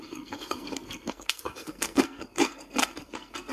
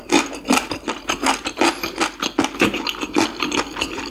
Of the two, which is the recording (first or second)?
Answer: second